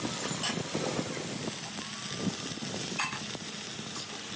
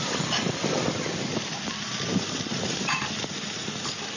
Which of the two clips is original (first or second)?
first